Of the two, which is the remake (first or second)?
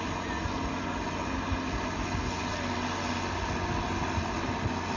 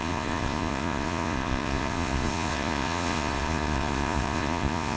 second